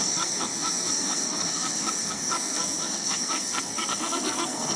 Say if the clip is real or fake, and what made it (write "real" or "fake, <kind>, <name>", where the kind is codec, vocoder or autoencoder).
fake, codec, SNAC